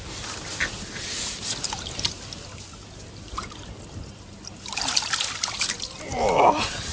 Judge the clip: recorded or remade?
recorded